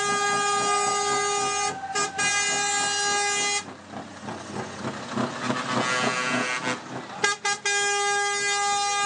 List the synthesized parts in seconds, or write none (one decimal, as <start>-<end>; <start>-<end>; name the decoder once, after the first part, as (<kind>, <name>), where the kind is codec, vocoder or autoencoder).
4.1-4.8 (vocoder, Vocos)